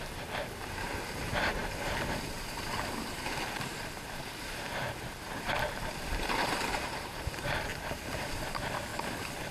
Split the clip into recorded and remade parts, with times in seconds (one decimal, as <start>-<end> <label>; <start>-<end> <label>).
0.0-8.9 remade; 8.9-9.5 recorded